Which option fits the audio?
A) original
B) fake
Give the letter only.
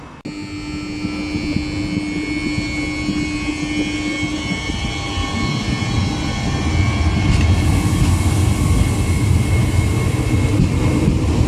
A